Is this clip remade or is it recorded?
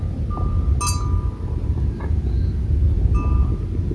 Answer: recorded